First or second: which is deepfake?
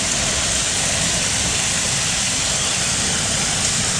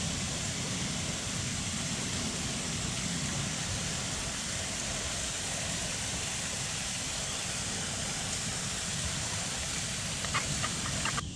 second